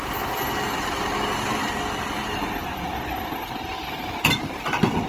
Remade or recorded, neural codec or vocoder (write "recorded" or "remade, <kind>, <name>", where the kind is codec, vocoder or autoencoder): recorded